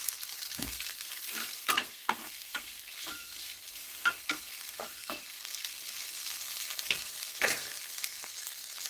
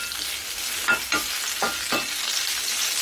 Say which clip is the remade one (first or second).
first